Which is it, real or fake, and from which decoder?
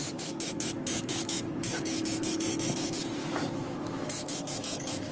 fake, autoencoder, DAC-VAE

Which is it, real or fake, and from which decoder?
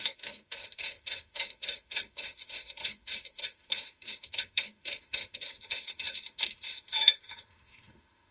fake, autoencoder, DAC-VAE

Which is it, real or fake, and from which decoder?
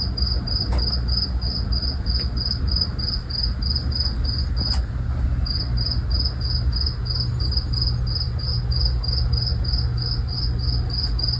real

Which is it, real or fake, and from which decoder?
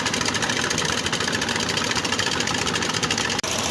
fake, vocoder, BigVGAN v2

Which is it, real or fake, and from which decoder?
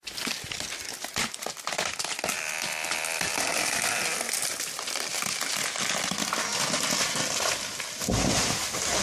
real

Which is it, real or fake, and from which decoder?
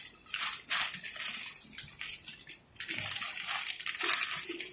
real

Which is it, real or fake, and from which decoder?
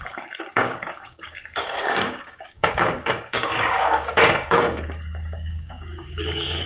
fake, codec, DAC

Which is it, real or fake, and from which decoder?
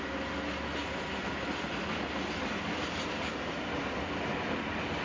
real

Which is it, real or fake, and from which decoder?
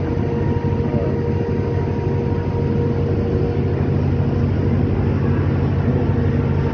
real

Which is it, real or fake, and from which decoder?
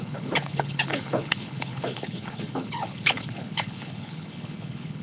fake, codec, HILCodec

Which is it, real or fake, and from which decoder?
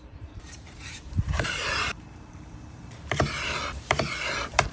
fake, vocoder, BigVGAN v2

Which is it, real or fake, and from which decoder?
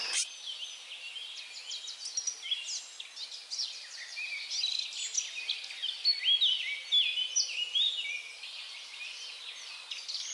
real